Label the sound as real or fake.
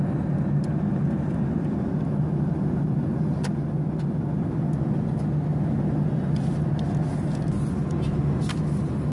real